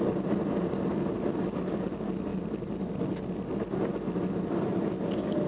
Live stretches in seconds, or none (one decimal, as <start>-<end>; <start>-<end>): 0.0-5.5